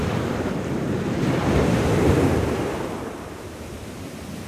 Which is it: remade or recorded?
remade